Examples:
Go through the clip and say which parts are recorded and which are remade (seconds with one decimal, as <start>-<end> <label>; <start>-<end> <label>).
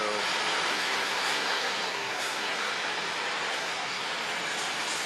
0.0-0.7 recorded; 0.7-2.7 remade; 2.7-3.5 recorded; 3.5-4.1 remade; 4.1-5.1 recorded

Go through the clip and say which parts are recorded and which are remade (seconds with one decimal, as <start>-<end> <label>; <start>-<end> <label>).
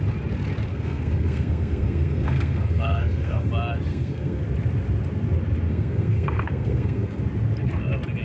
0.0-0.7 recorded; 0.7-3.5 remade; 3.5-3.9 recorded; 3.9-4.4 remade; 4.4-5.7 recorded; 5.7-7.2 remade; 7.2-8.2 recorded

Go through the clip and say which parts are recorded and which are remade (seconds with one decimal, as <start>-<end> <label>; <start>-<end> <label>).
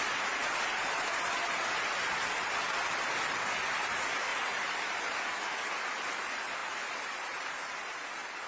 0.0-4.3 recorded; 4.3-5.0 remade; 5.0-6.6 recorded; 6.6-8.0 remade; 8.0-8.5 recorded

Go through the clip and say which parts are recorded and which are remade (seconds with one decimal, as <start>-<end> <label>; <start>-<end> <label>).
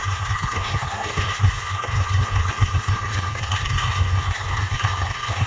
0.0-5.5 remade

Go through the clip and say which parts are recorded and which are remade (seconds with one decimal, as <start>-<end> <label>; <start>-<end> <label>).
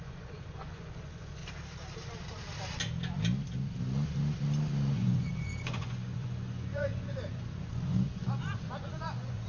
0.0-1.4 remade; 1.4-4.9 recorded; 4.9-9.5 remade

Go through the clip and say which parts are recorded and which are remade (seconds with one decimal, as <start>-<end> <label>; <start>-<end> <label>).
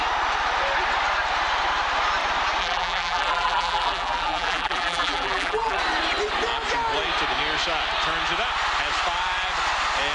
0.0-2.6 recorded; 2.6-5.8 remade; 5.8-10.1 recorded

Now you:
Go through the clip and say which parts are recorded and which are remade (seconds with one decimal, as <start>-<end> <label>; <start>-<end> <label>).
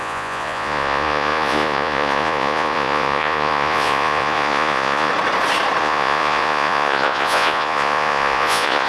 0.0-5.1 remade; 5.1-5.8 recorded; 5.8-8.9 remade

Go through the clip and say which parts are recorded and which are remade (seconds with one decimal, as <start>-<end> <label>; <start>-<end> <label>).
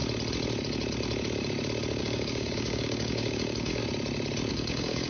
0.0-2.0 recorded; 2.0-3.8 remade; 3.8-4.5 recorded; 4.5-5.1 remade